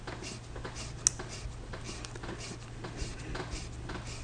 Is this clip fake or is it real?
real